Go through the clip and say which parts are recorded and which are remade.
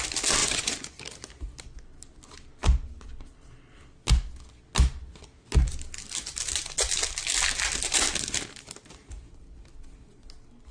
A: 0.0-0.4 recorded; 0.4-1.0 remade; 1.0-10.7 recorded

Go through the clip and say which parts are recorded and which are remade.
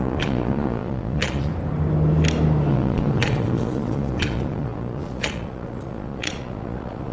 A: 0.0-1.5 remade; 1.5-2.7 recorded; 2.7-7.1 remade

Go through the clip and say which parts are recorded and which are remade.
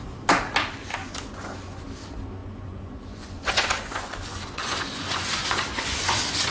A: 0.0-1.0 recorded; 1.0-1.8 remade; 1.8-2.4 recorded; 2.4-6.5 remade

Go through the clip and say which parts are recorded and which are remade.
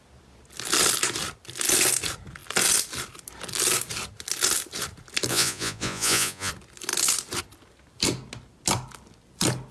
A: 0.0-5.3 recorded; 5.3-6.5 remade; 6.5-9.7 recorded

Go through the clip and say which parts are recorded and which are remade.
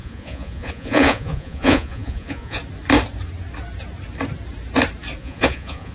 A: 0.0-2.6 remade; 2.6-5.2 recorded; 5.2-5.9 remade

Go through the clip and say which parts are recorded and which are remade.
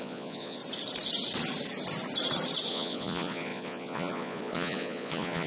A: 0.0-0.6 remade; 0.6-2.7 recorded; 2.7-5.5 remade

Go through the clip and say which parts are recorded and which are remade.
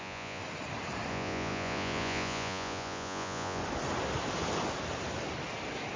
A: 0.0-0.4 remade; 0.4-1.1 recorded; 1.1-3.6 remade; 3.6-6.0 recorded